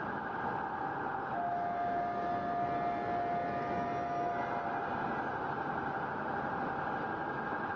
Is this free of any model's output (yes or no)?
yes